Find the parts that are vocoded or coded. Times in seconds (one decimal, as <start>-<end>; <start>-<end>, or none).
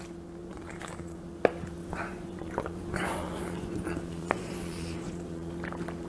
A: 0.4-1.2; 1.8-5.5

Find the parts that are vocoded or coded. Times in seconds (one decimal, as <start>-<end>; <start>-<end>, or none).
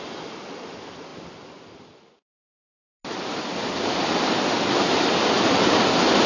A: none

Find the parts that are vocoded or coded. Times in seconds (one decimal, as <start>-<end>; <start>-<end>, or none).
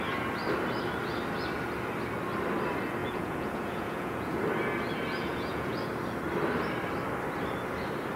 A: 3.0-4.4; 5.3-5.9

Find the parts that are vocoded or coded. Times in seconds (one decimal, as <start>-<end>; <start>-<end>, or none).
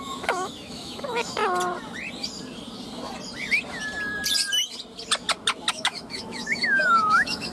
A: 0.0-1.4; 5.7-7.5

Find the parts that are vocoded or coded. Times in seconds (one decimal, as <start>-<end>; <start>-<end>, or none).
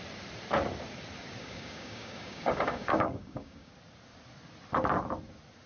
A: 1.4-3.7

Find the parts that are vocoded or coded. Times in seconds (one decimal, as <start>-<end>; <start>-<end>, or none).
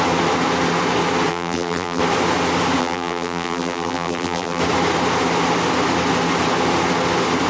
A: 1.3-2.0; 2.8-4.6